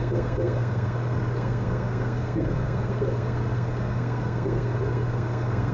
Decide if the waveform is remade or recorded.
remade